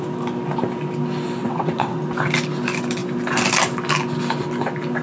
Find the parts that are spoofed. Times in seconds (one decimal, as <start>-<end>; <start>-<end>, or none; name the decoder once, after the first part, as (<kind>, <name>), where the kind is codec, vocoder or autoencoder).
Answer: 1.4-2.0 (vocoder, WaveNeXt)